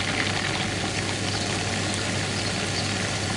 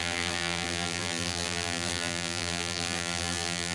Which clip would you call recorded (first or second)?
first